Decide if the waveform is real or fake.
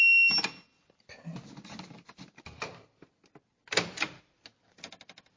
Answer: real